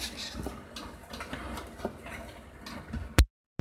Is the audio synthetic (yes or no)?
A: no